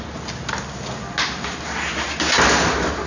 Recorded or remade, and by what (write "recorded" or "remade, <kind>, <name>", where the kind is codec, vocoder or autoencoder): recorded